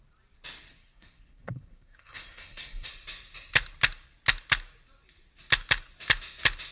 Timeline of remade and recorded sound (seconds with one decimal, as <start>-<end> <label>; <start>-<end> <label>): 0.0-0.7 recorded; 0.7-2.9 remade; 2.9-6.7 recorded